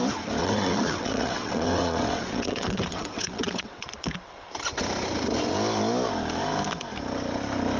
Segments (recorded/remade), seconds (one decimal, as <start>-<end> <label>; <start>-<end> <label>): 0.0-0.4 recorded; 0.4-3.9 remade; 3.9-7.8 recorded